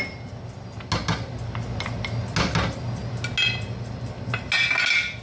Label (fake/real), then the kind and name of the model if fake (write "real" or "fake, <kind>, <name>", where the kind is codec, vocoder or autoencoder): real